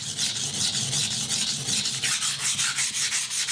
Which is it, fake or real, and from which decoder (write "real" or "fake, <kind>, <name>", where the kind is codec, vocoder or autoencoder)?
real